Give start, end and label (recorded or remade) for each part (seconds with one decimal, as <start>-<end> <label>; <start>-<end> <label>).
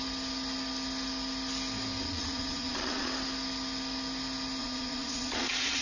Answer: 0.0-2.0 recorded; 2.0-3.1 remade; 3.1-4.6 recorded; 4.6-5.8 remade